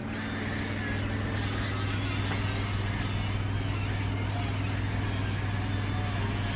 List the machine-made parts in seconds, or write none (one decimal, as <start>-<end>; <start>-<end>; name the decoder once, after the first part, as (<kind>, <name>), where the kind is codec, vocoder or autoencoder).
none